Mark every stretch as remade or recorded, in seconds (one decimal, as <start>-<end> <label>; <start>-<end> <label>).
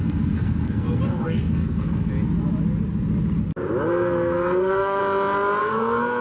0.0-2.1 remade; 2.1-3.9 recorded; 3.9-5.0 remade; 5.0-5.6 recorded; 5.6-6.2 remade